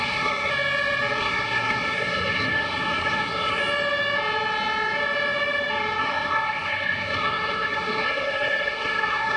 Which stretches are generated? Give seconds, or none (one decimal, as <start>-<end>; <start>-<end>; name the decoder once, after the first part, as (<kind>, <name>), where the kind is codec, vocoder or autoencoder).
0.0-0.5 (codec, SNAC); 1.2-3.6; 6.0-9.4